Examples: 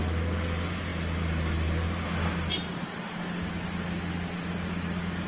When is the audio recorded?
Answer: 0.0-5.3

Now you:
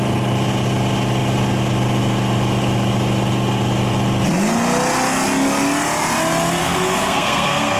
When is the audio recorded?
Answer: 0.0-6.6

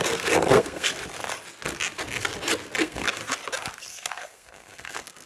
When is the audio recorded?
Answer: 0.9-2.8; 3.2-3.8

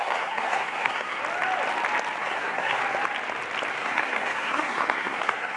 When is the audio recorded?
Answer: 1.2-2.2; 2.8-3.7

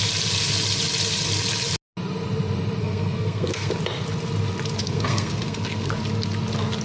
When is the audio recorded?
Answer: 0.0-2.8; 3.7-4.8; 6.0-6.8